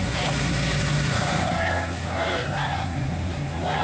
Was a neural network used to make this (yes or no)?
yes